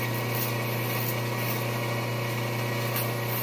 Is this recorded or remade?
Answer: recorded